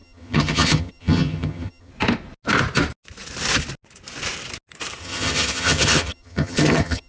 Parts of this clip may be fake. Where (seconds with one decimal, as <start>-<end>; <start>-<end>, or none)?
0.0-1.9; 5.0-7.1